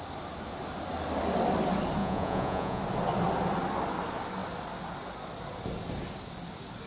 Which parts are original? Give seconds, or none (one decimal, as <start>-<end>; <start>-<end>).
0.0-2.0; 2.8-6.9